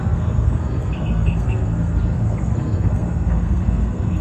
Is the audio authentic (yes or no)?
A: no